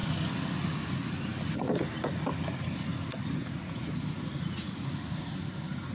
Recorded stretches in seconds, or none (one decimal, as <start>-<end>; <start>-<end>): 0.0-3.4; 5.3-5.9